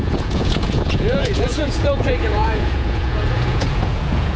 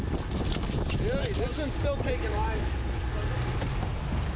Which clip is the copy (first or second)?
first